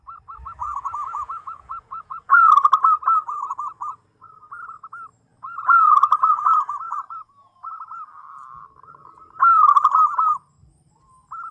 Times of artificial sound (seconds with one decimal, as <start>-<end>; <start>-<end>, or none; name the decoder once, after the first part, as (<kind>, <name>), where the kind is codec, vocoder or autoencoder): 1.0-2.5 (vocoder, Vocos); 5.3-7.7